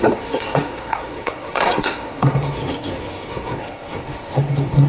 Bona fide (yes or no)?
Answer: no